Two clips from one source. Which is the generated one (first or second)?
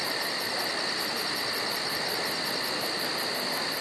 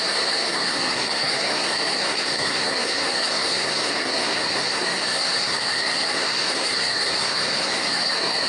second